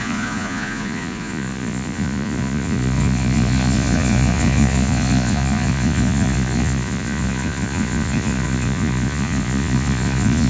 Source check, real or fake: fake